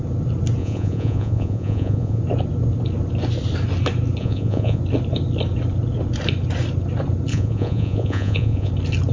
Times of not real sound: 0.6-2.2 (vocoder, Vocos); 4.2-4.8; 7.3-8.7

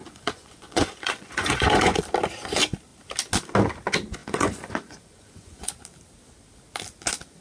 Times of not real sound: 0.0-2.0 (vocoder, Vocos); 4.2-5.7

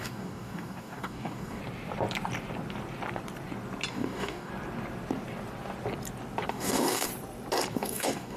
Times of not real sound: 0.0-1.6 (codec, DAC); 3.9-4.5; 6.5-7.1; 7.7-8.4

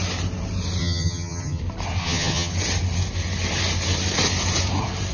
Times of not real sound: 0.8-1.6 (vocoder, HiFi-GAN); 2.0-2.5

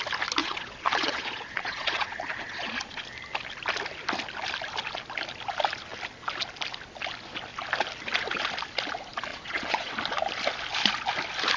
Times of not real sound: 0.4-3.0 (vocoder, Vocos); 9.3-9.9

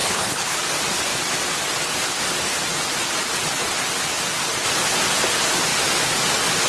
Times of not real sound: 0.0-0.6 (codec, HILCodec)